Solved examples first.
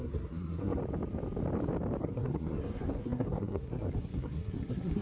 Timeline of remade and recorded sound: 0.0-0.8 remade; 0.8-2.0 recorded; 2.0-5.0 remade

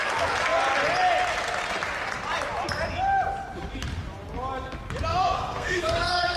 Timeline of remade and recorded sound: 0.0-5.1 recorded; 5.1-6.4 remade

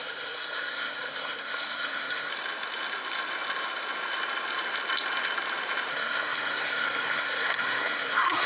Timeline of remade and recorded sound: 0.0-2.3 remade; 2.3-5.9 recorded; 5.9-8.5 remade

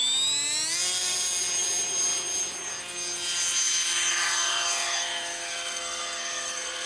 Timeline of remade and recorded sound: 0.0-4.1 recorded; 4.1-6.9 remade

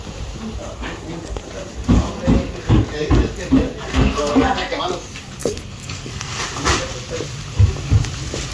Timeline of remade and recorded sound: 0.0-3.9 recorded; 3.9-4.8 remade; 4.8-5.4 recorded; 5.4-6.4 remade; 6.4-8.5 recorded

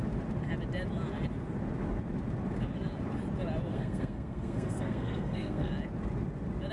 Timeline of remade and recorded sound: 0.0-3.7 recorded; 3.7-5.7 remade; 5.7-6.7 recorded

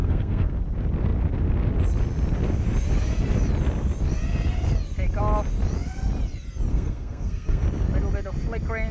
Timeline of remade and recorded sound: 0.0-0.6 remade; 0.6-6.7 recorded; 6.7-7.6 remade; 7.6-8.9 recorded

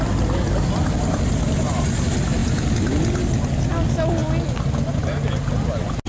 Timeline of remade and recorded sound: 0.0-6.1 recorded